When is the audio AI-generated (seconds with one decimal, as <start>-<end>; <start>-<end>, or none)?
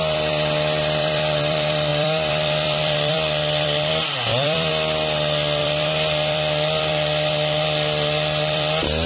0.0-4.7; 5.6-9.1